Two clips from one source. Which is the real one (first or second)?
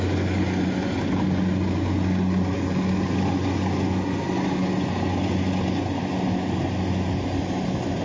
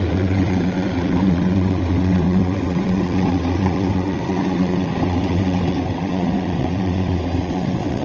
first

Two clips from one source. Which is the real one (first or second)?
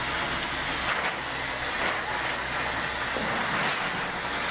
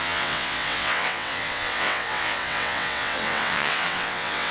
first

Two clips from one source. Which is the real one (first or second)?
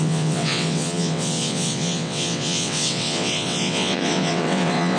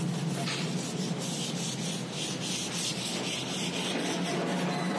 second